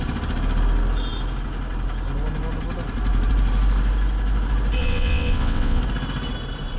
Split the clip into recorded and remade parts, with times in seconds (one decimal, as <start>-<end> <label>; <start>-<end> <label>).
0.0-4.8 recorded; 4.8-5.8 remade; 5.8-6.8 recorded